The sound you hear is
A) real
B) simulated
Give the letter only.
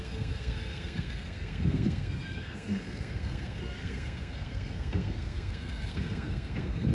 B